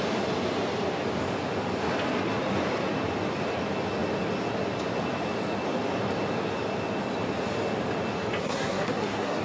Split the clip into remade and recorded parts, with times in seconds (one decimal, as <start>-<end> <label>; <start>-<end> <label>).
0.0-8.4 recorded; 8.4-9.4 remade